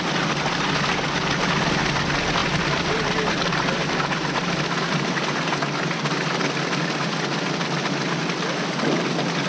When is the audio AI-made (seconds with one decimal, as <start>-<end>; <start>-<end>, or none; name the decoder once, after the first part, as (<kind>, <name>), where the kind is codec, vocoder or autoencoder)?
none